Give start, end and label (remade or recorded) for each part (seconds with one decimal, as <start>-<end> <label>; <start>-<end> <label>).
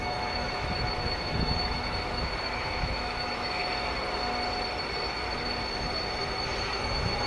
0.0-3.6 remade; 3.6-6.6 recorded; 6.6-7.3 remade